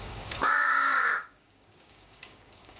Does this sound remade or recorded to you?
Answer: remade